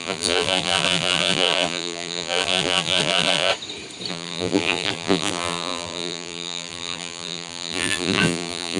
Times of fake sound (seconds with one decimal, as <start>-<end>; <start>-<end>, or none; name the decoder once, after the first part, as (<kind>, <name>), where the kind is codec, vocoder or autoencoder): 0.0-3.5 (vocoder, BigVGAN v2); 4.1-8.8